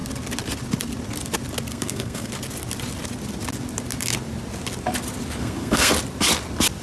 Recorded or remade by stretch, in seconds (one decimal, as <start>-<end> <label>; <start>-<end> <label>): 0.0-1.7 recorded; 1.7-2.3 remade; 2.3-5.4 recorded; 5.4-5.9 remade; 5.9-6.8 recorded